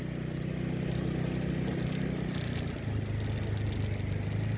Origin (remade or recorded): recorded